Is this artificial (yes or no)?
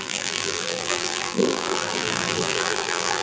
yes